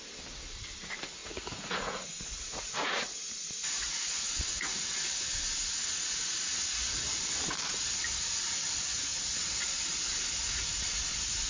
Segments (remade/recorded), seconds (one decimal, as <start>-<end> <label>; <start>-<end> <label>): 0.0-1.2 recorded; 1.2-5.1 remade; 5.1-5.8 recorded; 5.8-7.2 remade; 7.2-11.5 recorded